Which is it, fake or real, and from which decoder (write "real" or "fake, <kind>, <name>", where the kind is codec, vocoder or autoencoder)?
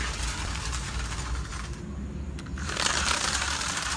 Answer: fake, vocoder, BigVGAN v2